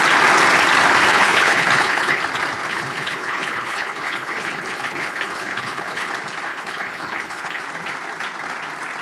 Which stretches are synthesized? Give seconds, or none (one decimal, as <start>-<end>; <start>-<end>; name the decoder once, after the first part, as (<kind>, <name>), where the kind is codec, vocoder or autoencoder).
1.1-2.2 (codec, HILCodec); 2.7-6.1; 6.5-7.6